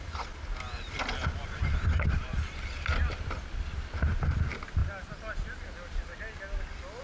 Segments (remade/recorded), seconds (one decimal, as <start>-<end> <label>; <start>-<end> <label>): 0.0-7.0 recorded